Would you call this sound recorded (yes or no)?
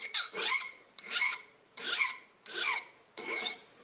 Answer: no